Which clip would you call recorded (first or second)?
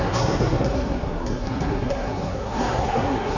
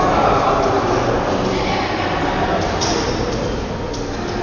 second